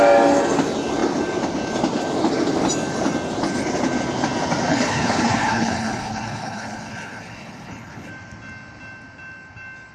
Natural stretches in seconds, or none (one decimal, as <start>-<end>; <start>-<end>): 0.0-4.7; 8.1-9.9